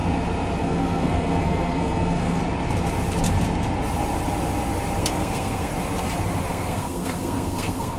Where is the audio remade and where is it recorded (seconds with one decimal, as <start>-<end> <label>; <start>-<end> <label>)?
0.0-0.6 recorded; 0.6-2.4 remade; 2.4-5.0 recorded; 5.0-5.7 remade; 5.7-6.5 recorded; 6.5-8.0 remade